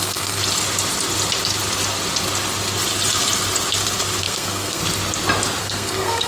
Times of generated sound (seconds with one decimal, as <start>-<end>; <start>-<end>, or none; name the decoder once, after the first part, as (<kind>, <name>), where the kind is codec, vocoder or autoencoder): 0.0-0.4 (codec, SNAC); 4.2-4.8; 5.6-6.3